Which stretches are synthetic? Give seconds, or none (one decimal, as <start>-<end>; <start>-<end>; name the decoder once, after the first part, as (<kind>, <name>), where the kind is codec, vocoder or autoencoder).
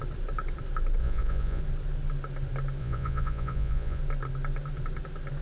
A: 1.0-1.6 (vocoder, Vocos); 2.8-4.0